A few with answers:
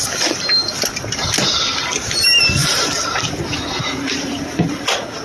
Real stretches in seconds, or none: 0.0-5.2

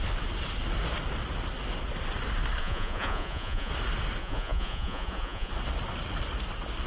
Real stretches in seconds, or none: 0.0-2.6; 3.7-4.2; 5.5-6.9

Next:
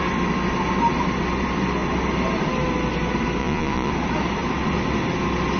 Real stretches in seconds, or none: 0.0-3.4; 3.9-5.6

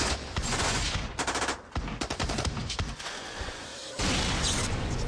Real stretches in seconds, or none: 1.1-2.6; 3.7-4.3

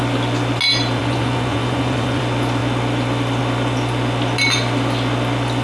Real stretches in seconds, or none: 0.0-1.0; 2.2-5.6

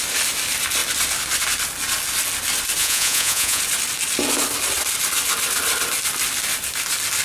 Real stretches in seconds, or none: 0.0-2.8; 3.6-7.2

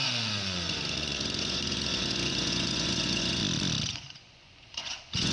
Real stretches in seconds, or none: 3.4-3.9

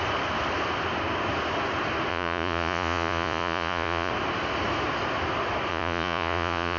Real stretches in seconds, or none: 0.0-2.1; 4.1-5.7